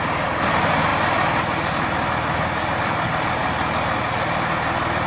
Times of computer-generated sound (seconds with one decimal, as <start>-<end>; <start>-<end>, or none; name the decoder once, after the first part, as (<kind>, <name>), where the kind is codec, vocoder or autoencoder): none